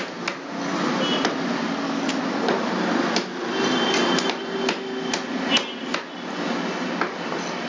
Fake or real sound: real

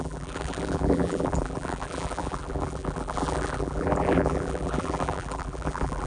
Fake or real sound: fake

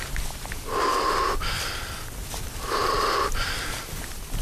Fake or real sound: real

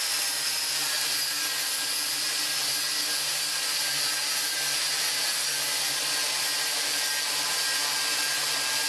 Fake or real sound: real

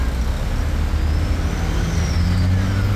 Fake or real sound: real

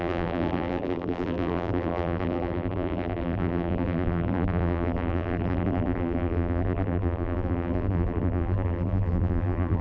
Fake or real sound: fake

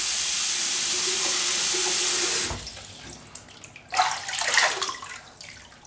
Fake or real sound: real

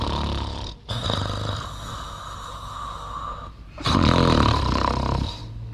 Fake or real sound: real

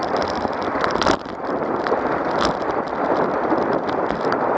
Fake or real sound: fake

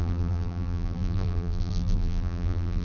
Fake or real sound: fake